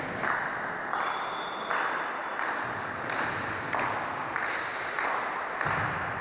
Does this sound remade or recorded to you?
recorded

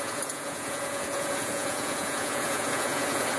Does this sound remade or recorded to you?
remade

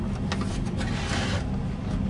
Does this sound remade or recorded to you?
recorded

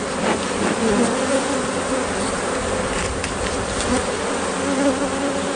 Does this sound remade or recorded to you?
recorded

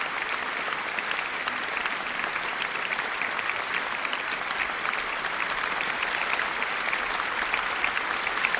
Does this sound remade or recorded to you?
recorded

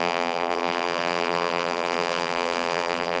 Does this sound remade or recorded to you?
remade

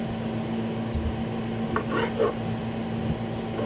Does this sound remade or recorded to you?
recorded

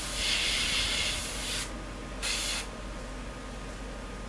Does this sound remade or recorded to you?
recorded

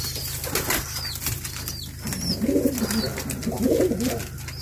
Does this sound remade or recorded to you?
recorded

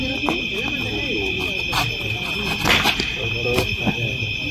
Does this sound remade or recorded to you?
recorded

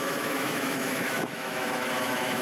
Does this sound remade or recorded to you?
remade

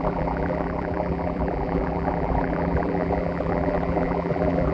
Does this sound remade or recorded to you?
remade